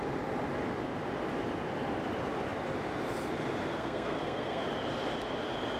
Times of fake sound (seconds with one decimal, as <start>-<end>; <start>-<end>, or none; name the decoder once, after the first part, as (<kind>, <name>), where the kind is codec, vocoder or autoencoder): 3.7-4.6 (codec, SNAC)